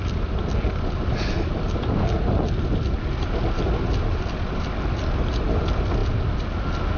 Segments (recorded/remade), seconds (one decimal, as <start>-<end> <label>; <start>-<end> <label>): 0.0-7.0 recorded